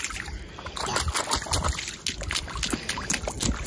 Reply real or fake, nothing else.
real